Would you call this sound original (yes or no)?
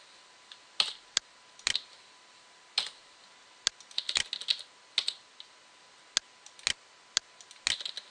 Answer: yes